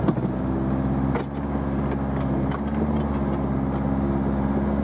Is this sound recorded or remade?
recorded